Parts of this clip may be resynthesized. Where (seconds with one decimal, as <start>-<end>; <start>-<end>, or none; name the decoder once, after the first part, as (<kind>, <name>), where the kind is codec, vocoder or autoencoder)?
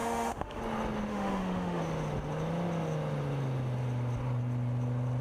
0.0-0.6 (autoencoder, DAC-VAE); 1.1-1.8